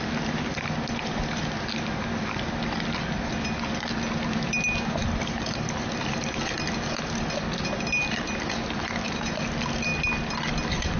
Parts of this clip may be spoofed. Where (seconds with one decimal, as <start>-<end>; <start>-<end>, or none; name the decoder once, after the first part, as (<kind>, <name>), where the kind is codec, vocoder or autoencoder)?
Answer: 5.0-5.9 (vocoder, BigVGAN v2)